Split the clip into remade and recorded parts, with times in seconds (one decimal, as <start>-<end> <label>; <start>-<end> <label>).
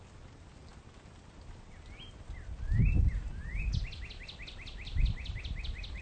0.0-6.0 recorded